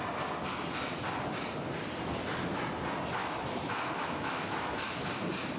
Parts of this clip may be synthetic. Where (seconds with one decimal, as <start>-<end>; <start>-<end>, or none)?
3.2-4.7